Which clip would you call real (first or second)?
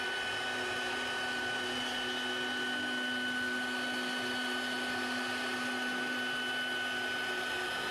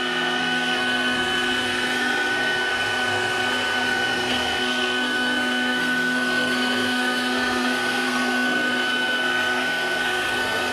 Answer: first